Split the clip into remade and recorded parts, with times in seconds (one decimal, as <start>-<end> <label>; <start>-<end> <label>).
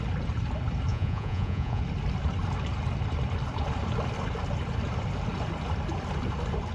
0.0-0.9 recorded; 0.9-1.8 remade; 1.8-6.7 recorded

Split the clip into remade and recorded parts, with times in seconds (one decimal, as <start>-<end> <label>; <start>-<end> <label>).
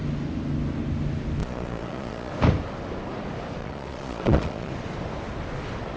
0.0-1.4 recorded; 1.4-2.3 remade; 2.3-3.6 recorded; 3.6-4.7 remade; 4.7-6.0 recorded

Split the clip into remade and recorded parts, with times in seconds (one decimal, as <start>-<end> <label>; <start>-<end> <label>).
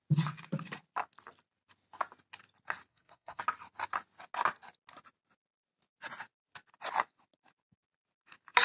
0.0-2.9 recorded; 2.9-3.4 remade; 3.4-8.6 recorded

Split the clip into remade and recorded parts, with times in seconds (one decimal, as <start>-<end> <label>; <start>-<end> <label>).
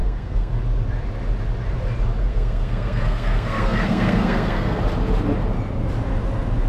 0.0-0.5 remade; 0.5-2.2 recorded; 2.2-4.8 remade; 4.8-6.7 recorded